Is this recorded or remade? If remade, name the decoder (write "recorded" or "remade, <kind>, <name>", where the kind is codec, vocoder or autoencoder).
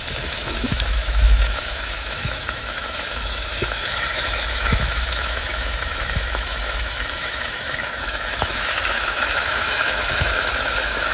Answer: remade, autoencoder, DAC-VAE